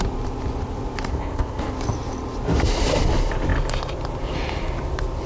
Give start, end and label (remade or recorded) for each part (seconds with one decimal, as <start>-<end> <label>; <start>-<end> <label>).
0.0-1.1 recorded; 1.1-1.6 remade; 1.6-5.3 recorded